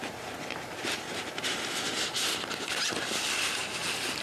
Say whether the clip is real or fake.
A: fake